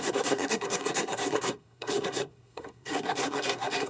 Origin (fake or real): fake